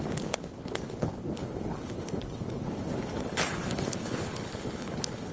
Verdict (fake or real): fake